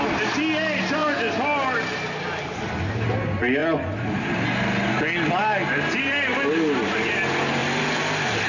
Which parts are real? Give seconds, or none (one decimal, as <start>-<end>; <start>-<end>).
0.0-7.6

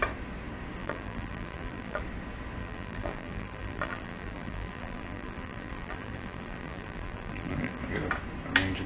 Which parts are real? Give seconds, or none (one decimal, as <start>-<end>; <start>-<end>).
0.0-0.8; 2.0-2.6; 7.8-8.9